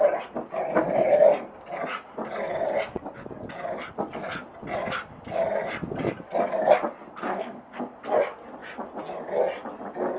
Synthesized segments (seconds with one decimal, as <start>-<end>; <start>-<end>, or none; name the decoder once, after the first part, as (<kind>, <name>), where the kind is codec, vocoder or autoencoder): 7.3-7.8 (codec, SNAC)